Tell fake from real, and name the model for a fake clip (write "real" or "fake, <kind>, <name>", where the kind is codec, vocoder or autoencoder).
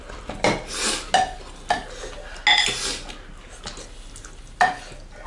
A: real